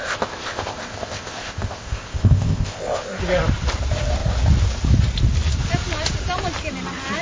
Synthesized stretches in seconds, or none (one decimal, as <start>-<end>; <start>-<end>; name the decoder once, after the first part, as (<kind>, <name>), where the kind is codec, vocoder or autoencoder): 0.0-3.2 (codec, ZipCodec)